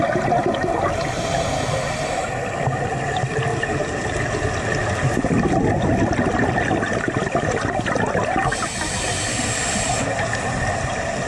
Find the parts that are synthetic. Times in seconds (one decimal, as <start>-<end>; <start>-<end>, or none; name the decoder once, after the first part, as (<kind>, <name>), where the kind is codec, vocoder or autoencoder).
3.5-4.1 (vocoder, BigVGAN v2)